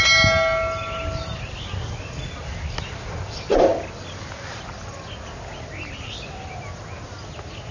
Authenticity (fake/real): real